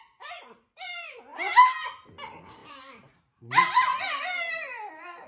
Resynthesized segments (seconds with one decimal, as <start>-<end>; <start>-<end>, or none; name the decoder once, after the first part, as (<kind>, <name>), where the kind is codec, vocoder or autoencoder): 0.0-5.3 (vocoder, BigVGAN v2)